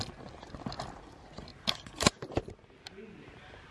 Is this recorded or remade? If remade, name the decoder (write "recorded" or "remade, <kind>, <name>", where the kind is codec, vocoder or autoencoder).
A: recorded